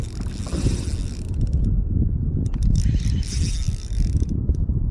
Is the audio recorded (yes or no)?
yes